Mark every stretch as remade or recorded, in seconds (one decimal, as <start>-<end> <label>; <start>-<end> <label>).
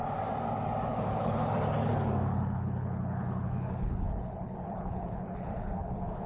0.0-0.9 recorded; 0.9-1.5 remade; 1.5-2.3 recorded; 2.3-6.3 remade